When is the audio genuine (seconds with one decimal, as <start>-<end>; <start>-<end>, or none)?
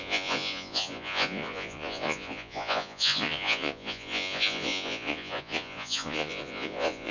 none